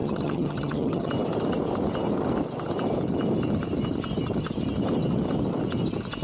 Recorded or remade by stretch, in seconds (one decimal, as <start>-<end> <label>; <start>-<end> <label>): 0.0-1.1 remade; 1.1-6.2 recorded